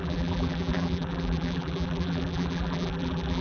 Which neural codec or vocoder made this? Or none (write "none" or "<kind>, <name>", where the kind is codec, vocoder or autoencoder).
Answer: vocoder, BigVGAN v2